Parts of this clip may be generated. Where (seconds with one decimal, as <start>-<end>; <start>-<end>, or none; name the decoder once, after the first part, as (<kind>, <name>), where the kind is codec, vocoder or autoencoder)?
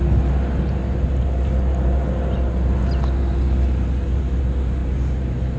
none